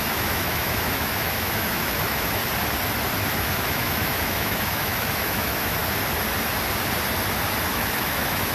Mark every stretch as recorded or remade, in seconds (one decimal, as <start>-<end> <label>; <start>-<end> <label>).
0.0-2.4 remade; 2.4-3.4 recorded; 3.4-5.8 remade; 5.8-7.7 recorded; 7.7-8.5 remade